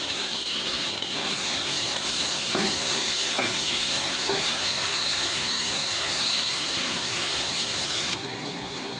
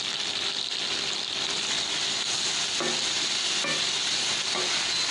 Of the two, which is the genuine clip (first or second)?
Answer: second